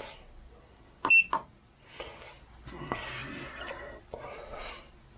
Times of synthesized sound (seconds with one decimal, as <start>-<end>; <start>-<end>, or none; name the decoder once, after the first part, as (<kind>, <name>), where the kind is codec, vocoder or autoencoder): none